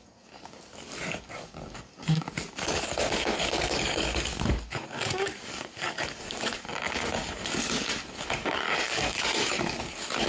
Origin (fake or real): fake